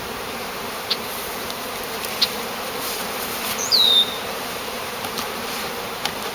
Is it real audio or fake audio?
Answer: fake